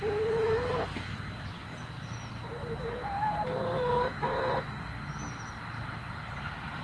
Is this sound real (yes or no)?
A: yes